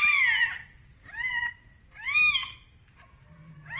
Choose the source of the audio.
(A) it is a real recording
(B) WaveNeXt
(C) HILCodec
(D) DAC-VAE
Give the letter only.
A